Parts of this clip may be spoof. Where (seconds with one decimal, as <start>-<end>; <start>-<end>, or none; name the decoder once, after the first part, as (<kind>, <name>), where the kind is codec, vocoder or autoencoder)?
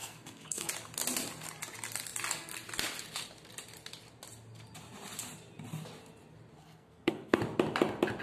0.0-0.7 (codec, SNAC); 6.6-7.4